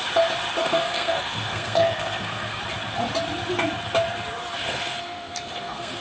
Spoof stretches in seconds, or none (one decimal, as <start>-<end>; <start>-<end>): 0.6-2.6; 4.6-6.0